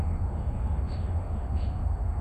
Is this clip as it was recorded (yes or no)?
no